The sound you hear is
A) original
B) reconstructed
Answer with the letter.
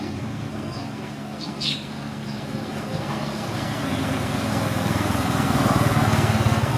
B